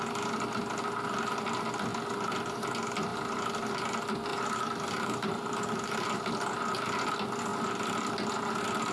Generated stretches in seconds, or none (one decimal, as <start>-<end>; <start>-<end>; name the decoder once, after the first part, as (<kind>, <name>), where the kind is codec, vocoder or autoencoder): 3.1-3.7 (vocoder, BigVGAN v2); 4.3-6.3